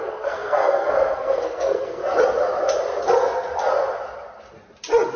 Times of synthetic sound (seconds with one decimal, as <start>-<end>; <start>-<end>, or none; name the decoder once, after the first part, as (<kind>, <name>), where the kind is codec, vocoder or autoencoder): 0.0-2.0 (codec, SNAC)